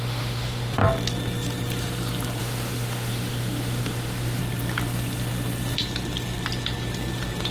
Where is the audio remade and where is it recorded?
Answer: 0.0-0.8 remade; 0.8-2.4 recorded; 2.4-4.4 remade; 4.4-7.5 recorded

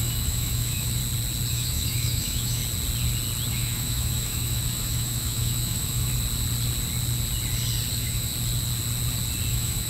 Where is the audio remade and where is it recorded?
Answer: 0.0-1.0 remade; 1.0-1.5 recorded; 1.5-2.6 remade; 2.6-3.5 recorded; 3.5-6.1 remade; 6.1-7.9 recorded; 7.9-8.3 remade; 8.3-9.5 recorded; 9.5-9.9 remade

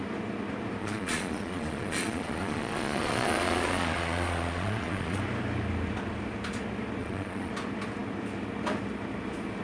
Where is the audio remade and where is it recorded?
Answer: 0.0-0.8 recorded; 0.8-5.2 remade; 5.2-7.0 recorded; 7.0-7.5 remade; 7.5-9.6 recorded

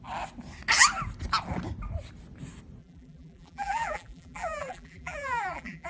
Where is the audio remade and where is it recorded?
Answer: 0.0-2.8 recorded; 2.8-5.9 remade